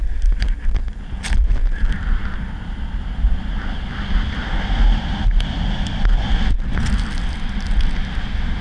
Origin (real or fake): real